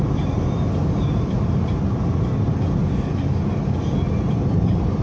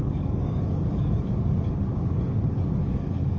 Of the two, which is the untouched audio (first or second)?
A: first